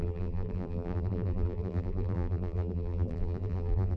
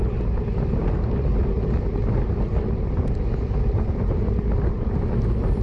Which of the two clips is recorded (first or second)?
second